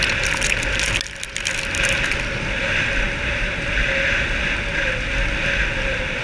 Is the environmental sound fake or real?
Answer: real